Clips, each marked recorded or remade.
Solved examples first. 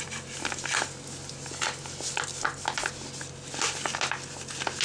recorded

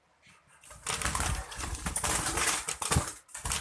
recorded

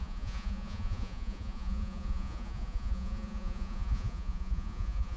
remade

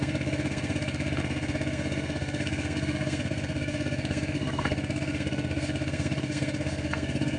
remade